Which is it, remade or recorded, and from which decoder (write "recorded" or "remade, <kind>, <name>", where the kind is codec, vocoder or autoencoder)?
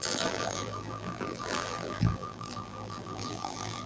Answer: remade, vocoder, BigVGAN v2